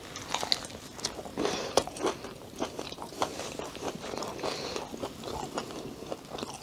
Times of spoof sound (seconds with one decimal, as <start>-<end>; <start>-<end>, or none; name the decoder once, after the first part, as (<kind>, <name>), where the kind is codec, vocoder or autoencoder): 1.3-4.2 (vocoder, BigVGAN v2)